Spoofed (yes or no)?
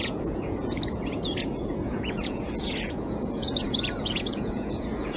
yes